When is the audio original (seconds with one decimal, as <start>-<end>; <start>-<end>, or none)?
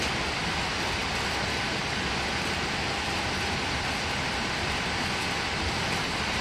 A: 0.0-6.4